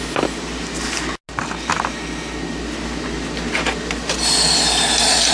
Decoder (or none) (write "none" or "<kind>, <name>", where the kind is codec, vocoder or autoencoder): none